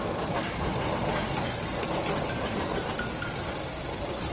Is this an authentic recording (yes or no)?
yes